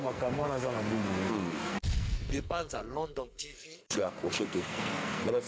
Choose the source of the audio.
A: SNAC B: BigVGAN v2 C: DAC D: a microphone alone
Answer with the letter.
A